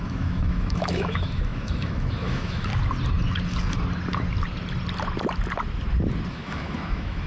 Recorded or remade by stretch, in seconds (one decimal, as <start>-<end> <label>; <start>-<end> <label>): 0.0-2.7 remade; 2.7-6.3 recorded; 6.3-7.3 remade